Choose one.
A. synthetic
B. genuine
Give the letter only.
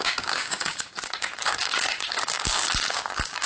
A